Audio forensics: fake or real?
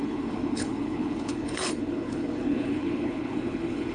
fake